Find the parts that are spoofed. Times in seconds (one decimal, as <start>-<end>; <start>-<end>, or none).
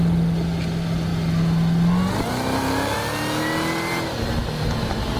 none